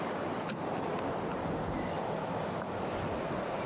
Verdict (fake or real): real